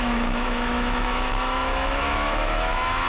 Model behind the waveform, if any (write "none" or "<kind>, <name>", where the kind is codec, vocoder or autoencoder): autoencoder, DAC-VAE